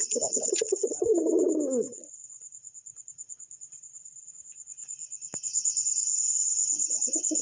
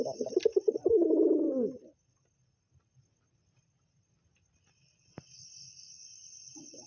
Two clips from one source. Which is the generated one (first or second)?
first